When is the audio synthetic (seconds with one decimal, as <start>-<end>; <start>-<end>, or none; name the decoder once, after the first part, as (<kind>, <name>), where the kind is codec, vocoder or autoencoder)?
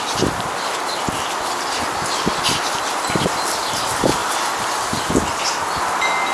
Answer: none